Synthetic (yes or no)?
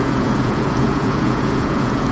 yes